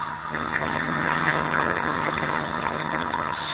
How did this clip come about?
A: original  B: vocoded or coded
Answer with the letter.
B